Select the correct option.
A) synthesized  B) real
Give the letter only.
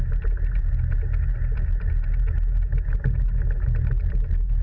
B